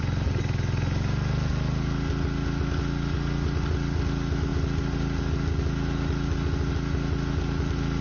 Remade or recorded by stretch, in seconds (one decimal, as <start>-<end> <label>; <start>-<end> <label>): 0.0-8.0 recorded